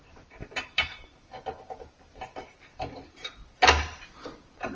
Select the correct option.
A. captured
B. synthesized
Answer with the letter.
B